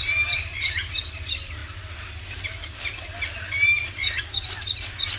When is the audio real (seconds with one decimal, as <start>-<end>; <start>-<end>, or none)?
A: 1.6-4.2